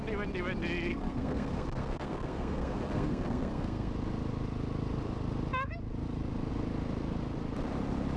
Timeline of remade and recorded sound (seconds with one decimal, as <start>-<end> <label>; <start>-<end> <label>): 0.0-0.9 recorded; 0.9-3.9 remade; 3.9-8.2 recorded